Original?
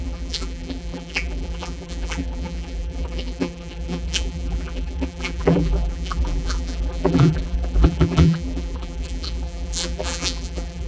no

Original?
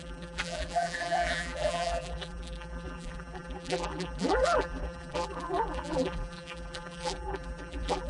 no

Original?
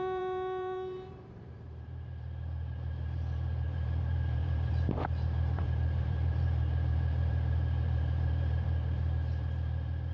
no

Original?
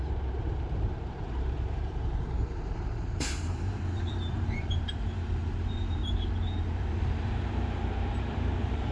no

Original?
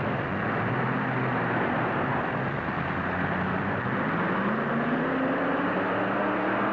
yes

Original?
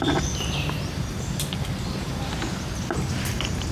yes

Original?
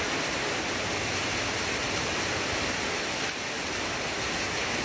yes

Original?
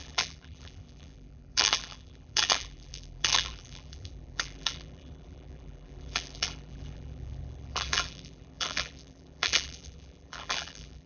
no